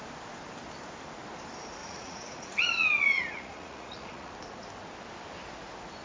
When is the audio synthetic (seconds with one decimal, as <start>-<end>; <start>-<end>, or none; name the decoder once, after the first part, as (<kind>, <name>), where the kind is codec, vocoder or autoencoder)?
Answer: 1.8-4.3 (vocoder, Vocos)